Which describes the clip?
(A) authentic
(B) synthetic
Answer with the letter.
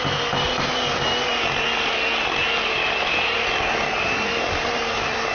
A